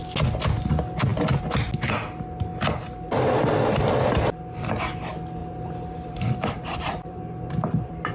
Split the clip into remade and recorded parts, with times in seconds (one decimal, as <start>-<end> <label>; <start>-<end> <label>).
0.0-5.4 recorded; 5.4-8.1 remade

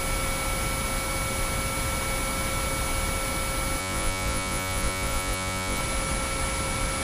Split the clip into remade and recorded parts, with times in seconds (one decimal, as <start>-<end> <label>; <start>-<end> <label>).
0.0-3.8 recorded; 3.8-5.8 remade; 5.8-7.0 recorded

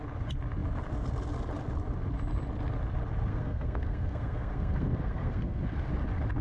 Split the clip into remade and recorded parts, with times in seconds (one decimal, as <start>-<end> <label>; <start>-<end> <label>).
0.0-3.3 recorded; 3.3-5.9 remade; 5.9-6.4 recorded

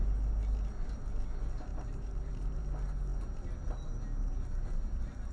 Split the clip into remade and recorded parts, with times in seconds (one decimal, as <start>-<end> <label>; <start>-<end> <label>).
0.0-1.7 recorded; 1.7-2.6 remade; 2.6-5.3 recorded

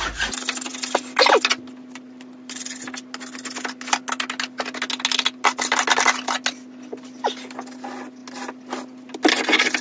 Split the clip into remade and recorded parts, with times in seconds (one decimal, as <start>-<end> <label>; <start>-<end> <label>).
0.0-9.8 recorded

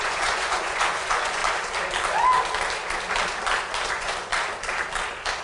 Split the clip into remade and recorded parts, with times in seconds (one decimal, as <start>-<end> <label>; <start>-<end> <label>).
0.0-1.4 remade; 1.4-3.9 recorded; 3.9-4.3 remade; 4.3-5.4 recorded

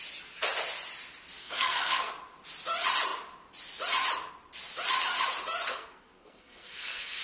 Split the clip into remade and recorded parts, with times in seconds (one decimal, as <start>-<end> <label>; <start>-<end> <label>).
0.0-1.4 recorded; 1.4-2.1 remade; 2.1-5.7 recorded; 5.7-7.2 remade